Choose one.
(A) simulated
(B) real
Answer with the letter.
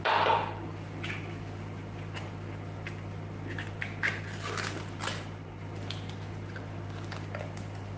B